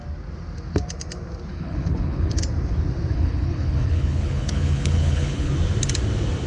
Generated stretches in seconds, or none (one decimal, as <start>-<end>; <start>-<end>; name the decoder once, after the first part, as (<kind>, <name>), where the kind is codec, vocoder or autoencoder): 1.5-2.4 (codec, HILCodec); 3.1-5.5